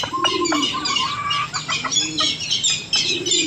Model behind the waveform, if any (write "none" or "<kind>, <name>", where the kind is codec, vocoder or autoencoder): none